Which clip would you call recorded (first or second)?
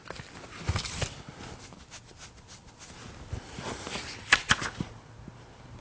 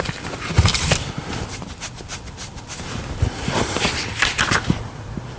first